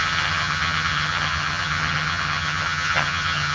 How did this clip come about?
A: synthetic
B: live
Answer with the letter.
A